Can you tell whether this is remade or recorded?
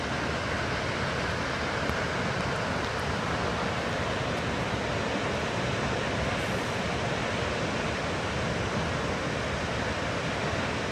recorded